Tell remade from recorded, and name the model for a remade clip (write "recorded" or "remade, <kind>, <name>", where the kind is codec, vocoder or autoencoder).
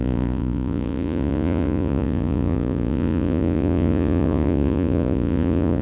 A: remade, vocoder, Vocos